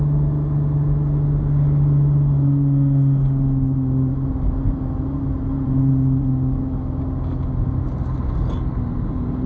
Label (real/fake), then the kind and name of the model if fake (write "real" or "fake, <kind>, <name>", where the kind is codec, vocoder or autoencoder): real